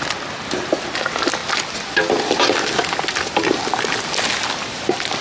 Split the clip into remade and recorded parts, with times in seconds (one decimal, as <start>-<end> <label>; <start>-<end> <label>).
0.0-5.2 recorded